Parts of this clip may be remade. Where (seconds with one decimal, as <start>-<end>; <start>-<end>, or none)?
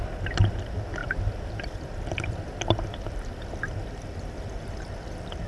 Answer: 0.0-5.5